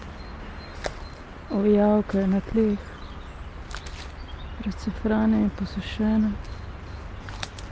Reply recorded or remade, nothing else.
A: recorded